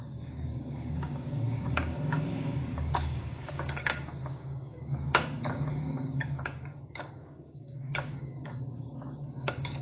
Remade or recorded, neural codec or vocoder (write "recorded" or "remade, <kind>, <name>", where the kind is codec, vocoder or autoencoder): remade, codec, DAC